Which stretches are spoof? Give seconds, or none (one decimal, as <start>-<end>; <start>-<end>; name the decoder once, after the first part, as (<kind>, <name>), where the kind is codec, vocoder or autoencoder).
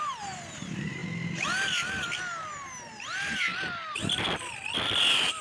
0.0-1.0 (vocoder, BigVGAN v2); 3.0-3.5